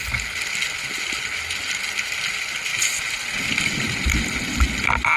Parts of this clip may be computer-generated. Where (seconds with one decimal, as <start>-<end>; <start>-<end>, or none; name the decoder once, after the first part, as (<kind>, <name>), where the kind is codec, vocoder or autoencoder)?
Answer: none